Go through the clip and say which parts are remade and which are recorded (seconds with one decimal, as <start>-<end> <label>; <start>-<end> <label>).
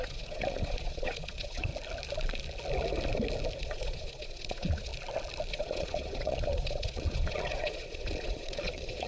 0.0-1.7 remade; 1.7-3.6 recorded; 3.6-4.9 remade; 4.9-5.5 recorded; 5.5-9.1 remade